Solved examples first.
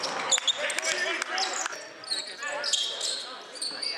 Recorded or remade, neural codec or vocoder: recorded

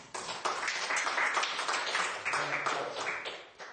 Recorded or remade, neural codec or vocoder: remade, vocoder, BigVGAN v2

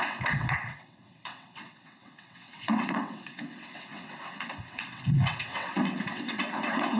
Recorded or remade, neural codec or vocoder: remade, vocoder, WaveNeXt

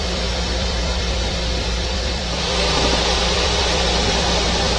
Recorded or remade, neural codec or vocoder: remade, vocoder, BigVGAN v2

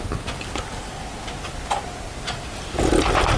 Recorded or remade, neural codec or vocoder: recorded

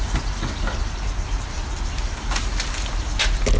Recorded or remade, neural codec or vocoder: recorded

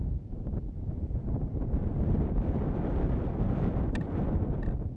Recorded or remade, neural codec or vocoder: recorded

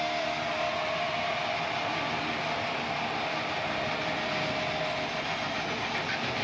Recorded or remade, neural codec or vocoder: recorded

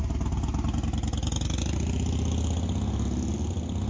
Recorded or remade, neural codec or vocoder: recorded